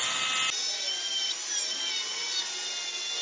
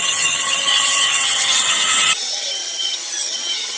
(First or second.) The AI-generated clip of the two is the second